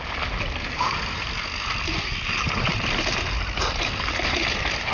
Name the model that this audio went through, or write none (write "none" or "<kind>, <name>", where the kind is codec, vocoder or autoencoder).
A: none